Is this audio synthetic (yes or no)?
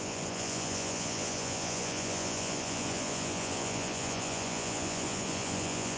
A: yes